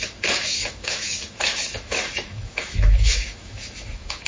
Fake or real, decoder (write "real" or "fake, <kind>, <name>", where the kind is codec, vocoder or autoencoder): fake, autoencoder, DAC-VAE